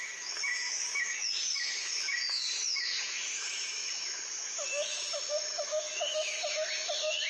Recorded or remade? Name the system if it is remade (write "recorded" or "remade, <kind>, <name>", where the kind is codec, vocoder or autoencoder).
remade, autoencoder, DAC-VAE